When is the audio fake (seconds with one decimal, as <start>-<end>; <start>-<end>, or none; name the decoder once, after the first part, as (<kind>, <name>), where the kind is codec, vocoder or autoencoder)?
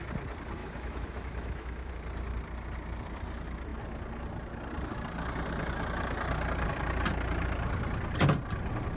0.6-1.9 (autoencoder, DAC-VAE)